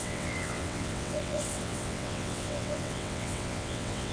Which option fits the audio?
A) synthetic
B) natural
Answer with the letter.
A